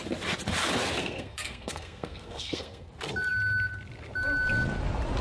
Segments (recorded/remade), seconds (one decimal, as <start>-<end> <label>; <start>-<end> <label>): 0.0-1.0 recorded; 1.0-2.9 remade; 2.9-5.2 recorded